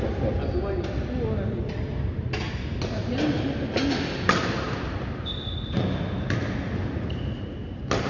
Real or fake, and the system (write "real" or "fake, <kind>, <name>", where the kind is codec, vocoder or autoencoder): real